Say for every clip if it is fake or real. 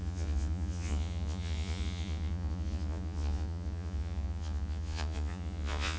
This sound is fake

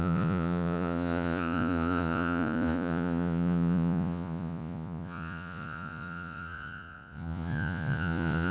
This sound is fake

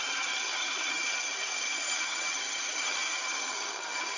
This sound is fake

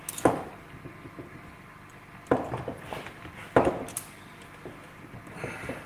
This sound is real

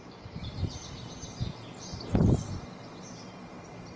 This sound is real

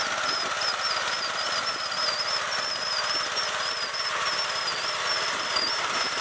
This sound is real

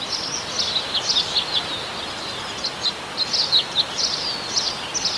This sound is real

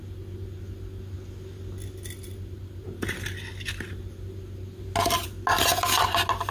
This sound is real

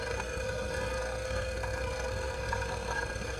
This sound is fake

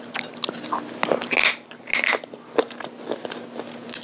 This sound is real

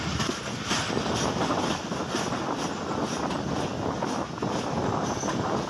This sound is real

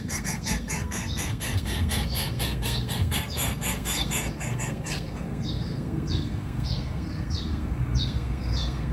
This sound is fake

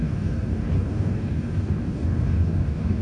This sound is fake